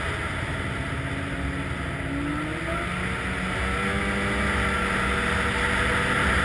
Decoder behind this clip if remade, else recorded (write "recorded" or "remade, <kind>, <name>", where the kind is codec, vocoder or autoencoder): recorded